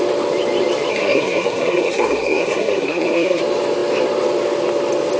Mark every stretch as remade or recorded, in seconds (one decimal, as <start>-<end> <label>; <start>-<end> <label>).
0.0-0.9 recorded; 0.9-3.4 remade; 3.4-5.2 recorded